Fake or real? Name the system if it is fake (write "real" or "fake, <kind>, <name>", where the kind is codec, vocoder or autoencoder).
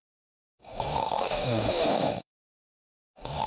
fake, codec, DAC